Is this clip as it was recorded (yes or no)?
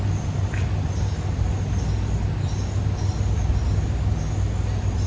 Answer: yes